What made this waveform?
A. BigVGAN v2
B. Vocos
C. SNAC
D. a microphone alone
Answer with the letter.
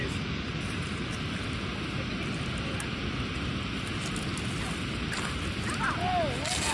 D